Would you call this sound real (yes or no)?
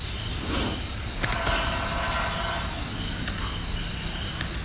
yes